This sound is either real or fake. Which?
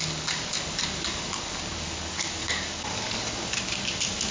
fake